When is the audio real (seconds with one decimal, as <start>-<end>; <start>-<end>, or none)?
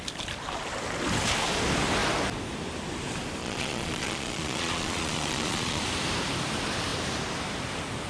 0.0-3.4; 5.8-8.1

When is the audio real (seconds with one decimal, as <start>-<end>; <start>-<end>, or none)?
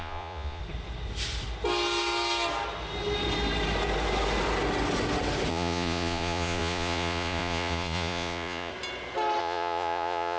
0.6-5.5; 8.7-9.4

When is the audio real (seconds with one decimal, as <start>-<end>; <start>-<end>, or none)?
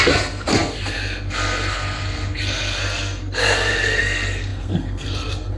none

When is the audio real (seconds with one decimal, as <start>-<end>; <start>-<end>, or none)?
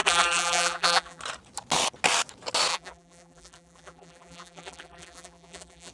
1.2-2.7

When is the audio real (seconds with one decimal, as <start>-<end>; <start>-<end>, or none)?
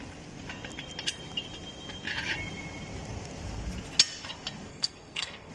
0.0-4.7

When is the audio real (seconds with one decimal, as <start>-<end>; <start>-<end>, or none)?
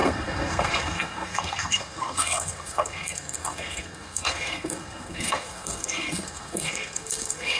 none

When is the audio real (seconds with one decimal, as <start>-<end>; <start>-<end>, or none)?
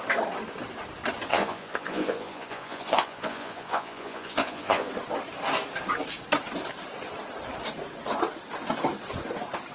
0.0-1.3; 4.9-9.7